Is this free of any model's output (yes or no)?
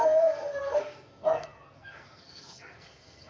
no